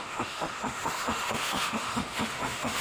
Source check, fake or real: fake